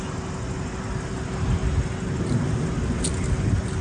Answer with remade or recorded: recorded